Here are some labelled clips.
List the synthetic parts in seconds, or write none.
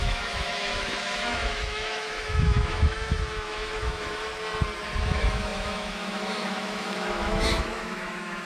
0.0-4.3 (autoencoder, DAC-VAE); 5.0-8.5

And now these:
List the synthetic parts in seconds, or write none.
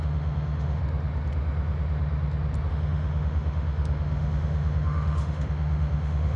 0.0-0.8 (autoencoder, DAC-VAE); 2.7-6.4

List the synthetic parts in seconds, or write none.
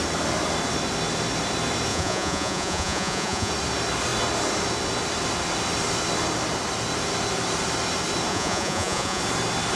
1.9-3.5 (vocoder, Vocos); 8.3-9.2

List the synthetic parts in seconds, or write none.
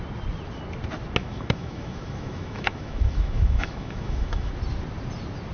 1.2-4.5 (autoencoder, DAC-VAE)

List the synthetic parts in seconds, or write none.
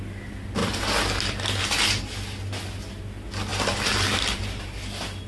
none